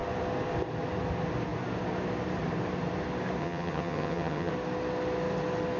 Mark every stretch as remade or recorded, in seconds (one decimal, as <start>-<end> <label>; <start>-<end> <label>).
0.0-3.4 recorded; 3.4-4.5 remade; 4.5-5.8 recorded